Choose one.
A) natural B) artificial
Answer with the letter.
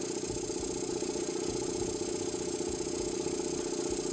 A